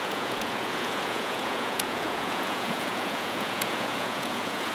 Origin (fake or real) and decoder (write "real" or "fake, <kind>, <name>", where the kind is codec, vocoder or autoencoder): fake, vocoder, Vocos